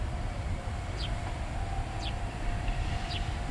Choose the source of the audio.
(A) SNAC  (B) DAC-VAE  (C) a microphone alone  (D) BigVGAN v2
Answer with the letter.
D